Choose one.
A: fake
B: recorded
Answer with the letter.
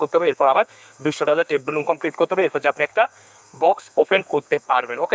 A